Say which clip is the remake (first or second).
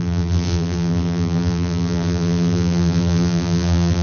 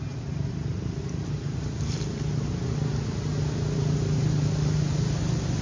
first